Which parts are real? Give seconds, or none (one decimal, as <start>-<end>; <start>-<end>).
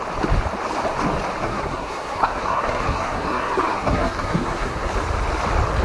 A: 0.0-1.4; 4.9-5.8